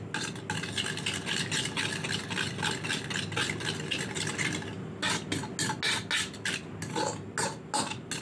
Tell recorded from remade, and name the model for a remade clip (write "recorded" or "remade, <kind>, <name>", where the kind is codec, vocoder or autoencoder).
recorded